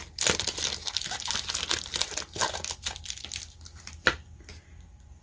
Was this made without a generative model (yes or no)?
yes